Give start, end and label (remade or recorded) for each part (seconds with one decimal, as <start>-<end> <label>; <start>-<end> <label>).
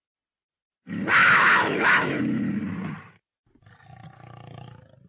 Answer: 0.0-1.2 recorded; 1.2-2.2 remade; 2.2-5.1 recorded